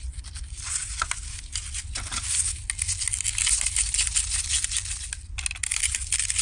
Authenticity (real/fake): real